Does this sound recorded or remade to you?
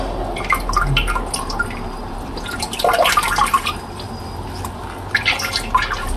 recorded